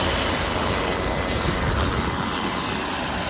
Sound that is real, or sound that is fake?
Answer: real